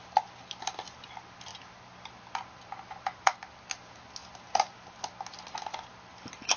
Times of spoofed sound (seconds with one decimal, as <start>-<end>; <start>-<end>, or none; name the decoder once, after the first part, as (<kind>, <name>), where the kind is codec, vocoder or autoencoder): none